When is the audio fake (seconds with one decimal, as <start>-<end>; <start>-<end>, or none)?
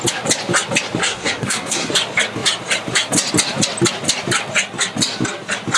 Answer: 1.0-1.9